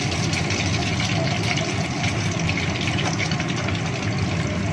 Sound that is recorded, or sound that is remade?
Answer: recorded